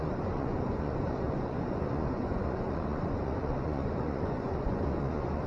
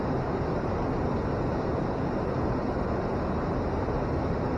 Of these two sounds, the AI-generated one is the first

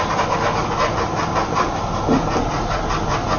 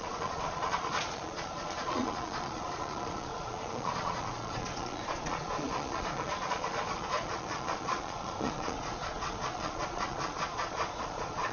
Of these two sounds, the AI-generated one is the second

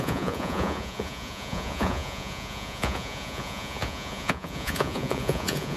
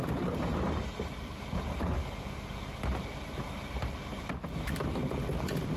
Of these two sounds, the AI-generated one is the first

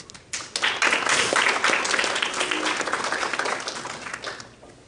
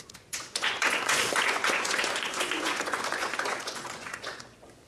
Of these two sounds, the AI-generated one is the second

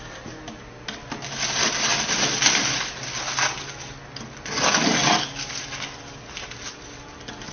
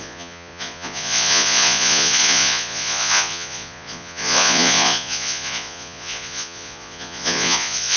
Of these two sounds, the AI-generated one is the second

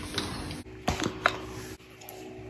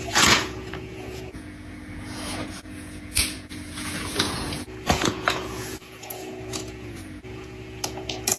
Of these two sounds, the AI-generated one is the second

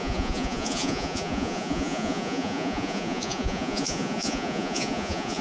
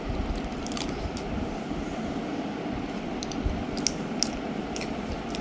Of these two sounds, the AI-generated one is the first